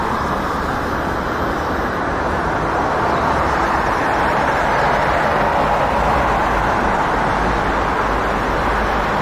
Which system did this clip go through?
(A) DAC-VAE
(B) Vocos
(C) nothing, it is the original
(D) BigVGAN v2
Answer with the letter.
C